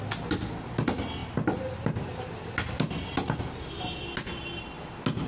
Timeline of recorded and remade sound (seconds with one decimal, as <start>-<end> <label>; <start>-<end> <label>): 0.0-5.3 recorded